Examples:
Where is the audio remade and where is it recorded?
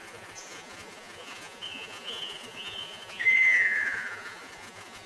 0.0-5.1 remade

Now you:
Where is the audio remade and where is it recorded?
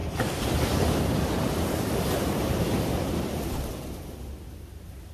0.0-5.1 recorded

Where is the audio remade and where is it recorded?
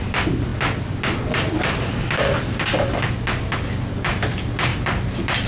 0.0-5.5 recorded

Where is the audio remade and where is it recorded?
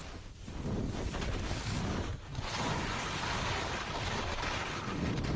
0.0-2.3 recorded; 2.3-3.0 remade; 3.0-5.4 recorded